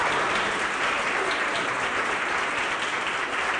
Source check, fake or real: real